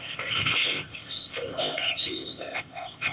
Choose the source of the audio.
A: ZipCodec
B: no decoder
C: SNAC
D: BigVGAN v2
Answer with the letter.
A